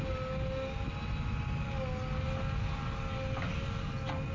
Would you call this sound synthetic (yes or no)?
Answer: no